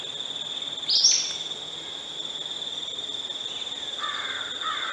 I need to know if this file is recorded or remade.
recorded